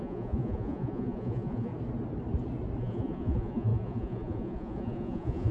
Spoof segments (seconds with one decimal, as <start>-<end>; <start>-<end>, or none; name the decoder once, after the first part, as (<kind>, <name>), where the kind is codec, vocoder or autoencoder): 0.0-1.7 (vocoder, Vocos); 2.8-5.5